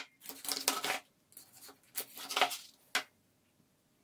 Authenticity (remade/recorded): recorded